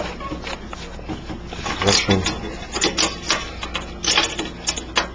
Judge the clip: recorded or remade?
recorded